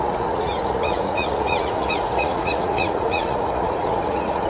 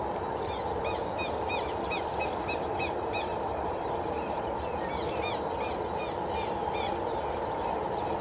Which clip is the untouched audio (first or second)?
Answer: second